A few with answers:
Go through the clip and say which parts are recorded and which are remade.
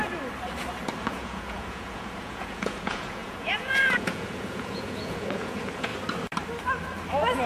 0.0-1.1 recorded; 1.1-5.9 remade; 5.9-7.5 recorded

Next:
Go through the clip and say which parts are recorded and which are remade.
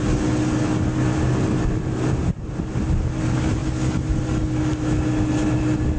0.0-6.0 recorded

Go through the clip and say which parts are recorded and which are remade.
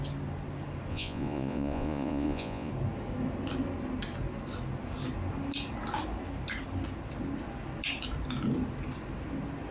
0.0-0.9 recorded; 0.9-2.7 remade; 2.7-9.7 recorded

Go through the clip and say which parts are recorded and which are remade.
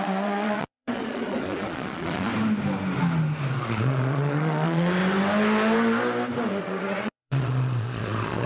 0.0-2.3 remade; 2.3-3.6 recorded; 3.6-5.0 remade; 5.0-6.6 recorded; 6.6-8.5 remade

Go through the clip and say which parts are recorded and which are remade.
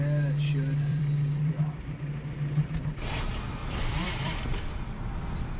0.0-0.9 recorded; 0.9-2.0 remade; 2.0-3.6 recorded; 3.6-4.6 remade; 4.6-5.6 recorded